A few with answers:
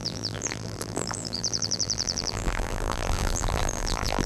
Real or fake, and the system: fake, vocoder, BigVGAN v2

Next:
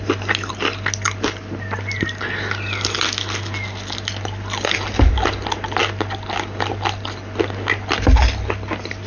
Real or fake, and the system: real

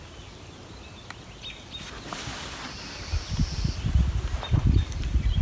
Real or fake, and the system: real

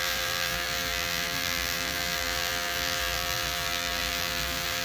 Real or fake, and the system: fake, vocoder, BigVGAN v2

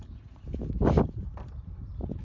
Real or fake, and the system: real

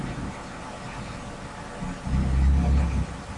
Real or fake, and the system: real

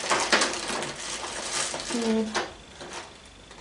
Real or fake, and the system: real